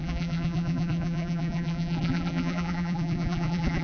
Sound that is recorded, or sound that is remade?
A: remade